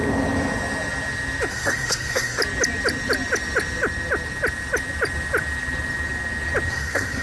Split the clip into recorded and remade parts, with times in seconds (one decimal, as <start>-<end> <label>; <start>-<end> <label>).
0.0-1.5 recorded; 1.5-2.4 remade; 2.4-6.7 recorded; 6.7-7.2 remade